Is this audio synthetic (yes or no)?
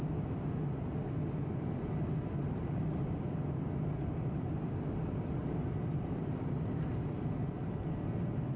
no